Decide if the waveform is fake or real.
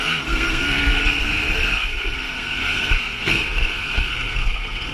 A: fake